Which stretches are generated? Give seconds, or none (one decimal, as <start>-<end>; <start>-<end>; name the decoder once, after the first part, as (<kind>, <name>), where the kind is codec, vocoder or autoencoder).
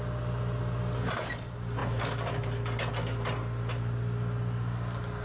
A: none